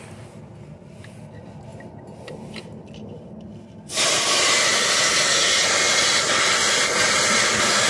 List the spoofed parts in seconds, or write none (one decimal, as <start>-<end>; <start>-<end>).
none